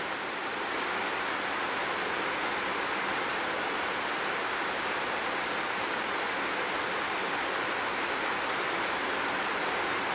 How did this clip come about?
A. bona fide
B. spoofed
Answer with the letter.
A